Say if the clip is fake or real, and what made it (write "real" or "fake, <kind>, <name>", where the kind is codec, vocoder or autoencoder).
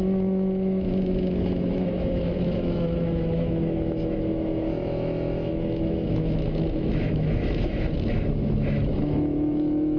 fake, autoencoder, DAC-VAE